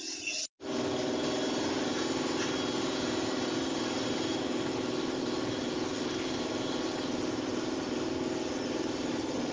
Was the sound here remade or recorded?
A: recorded